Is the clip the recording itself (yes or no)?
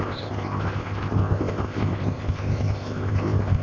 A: no